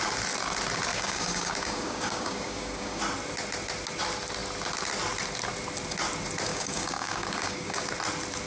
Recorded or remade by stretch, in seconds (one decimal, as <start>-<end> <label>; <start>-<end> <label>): 0.0-0.9 recorded; 0.9-3.0 remade; 3.0-6.5 recorded; 6.5-7.9 remade; 7.9-8.5 recorded

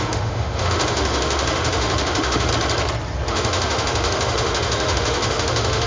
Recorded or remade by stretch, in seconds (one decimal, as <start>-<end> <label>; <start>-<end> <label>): 0.0-2.5 remade; 2.5-3.3 recorded; 3.3-5.9 remade

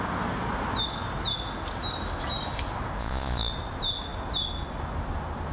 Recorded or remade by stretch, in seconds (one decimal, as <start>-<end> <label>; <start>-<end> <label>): 0.0-3.0 recorded; 3.0-3.5 remade; 3.5-5.5 recorded

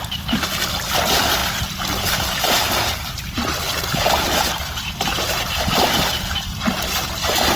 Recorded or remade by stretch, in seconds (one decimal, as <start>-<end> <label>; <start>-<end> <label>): 0.0-1.4 recorded; 1.4-5.3 remade; 5.3-7.6 recorded

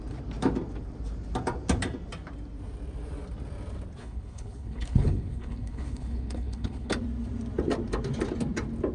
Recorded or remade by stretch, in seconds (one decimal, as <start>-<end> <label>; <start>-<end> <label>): 0.0-4.0 recorded; 4.0-6.9 remade; 6.9-8.9 recorded

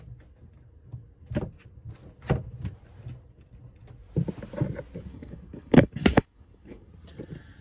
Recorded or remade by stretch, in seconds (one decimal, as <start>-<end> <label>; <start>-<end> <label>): 0.0-5.1 recorded; 5.1-6.9 remade; 6.9-7.6 recorded